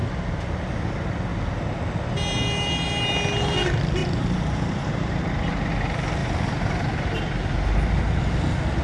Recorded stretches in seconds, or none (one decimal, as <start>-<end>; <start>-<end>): 0.0-4.0; 5.7-6.2; 7.2-8.8